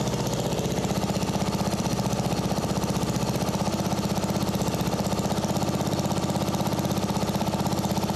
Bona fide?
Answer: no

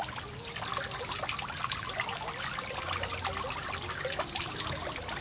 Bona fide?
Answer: yes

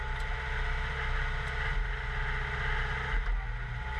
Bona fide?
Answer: yes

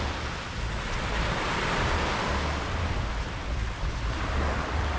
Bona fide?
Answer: yes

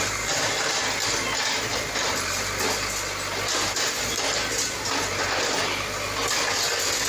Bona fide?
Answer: yes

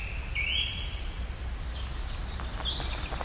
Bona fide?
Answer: yes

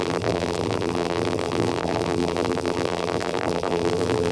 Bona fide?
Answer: no